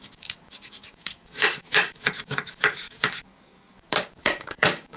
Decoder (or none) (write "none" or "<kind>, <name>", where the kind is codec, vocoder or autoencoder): codec, DAC